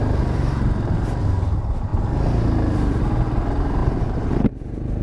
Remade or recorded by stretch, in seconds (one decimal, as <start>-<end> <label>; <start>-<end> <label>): 0.0-5.0 recorded